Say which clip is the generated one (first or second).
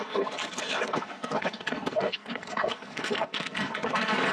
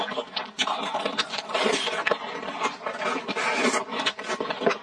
first